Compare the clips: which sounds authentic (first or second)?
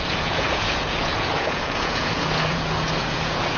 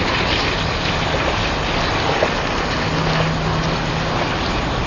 second